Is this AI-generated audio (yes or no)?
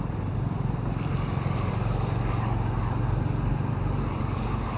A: no